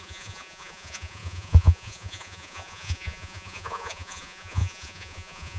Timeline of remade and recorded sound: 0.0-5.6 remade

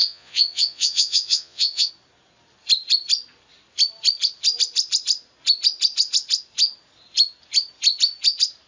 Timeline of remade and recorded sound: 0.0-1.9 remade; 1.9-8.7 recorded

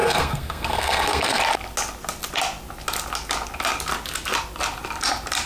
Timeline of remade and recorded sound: 0.0-1.4 remade; 1.4-5.5 recorded

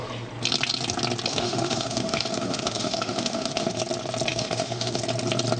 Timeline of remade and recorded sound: 0.0-1.3 recorded; 1.3-3.8 remade; 3.8-4.3 recorded; 4.3-5.0 remade; 5.0-5.6 recorded

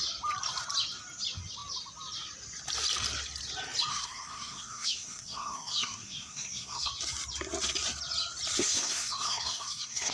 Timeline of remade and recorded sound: 0.0-3.9 recorded; 3.9-6.9 remade; 6.9-8.6 recorded; 8.6-10.1 remade

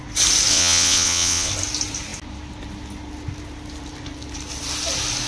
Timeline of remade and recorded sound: 0.0-0.5 recorded; 0.5-1.5 remade; 1.5-5.3 recorded

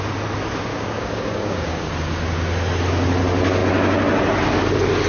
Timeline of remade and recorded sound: 0.0-0.7 recorded; 0.7-1.9 remade; 1.9-5.1 recorded